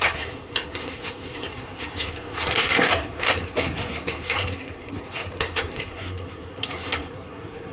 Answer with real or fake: fake